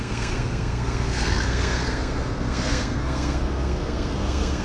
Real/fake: fake